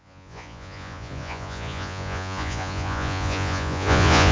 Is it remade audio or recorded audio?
remade